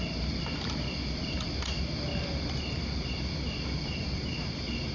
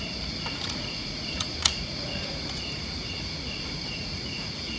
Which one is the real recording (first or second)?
first